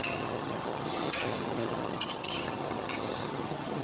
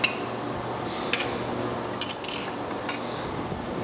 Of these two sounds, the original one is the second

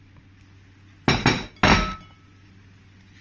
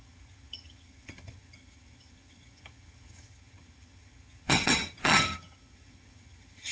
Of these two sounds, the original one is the first